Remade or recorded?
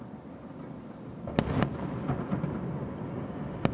recorded